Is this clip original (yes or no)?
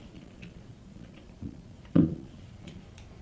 no